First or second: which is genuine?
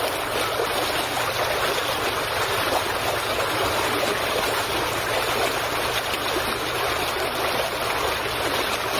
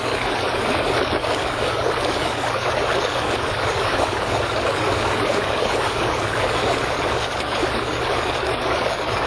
first